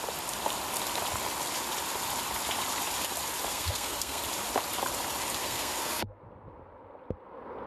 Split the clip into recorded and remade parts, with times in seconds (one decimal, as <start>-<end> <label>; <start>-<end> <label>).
0.0-3.5 recorded; 3.5-4.2 remade; 4.2-5.4 recorded; 5.4-6.2 remade; 6.2-7.7 recorded